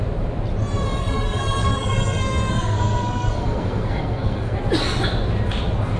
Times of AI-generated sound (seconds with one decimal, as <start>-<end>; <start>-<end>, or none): 1.0-4.6